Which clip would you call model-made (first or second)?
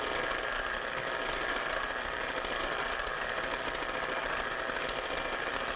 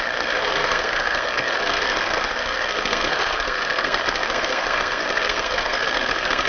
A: second